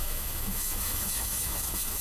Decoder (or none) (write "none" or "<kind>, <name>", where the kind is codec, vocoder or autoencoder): autoencoder, DAC-VAE